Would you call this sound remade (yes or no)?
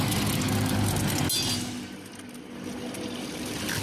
no